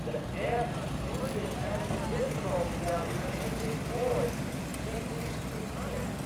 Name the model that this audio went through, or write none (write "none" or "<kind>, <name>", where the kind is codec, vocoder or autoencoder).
none